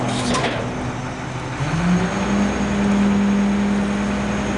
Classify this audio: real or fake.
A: real